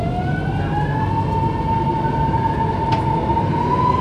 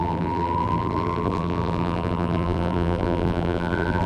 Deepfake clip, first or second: second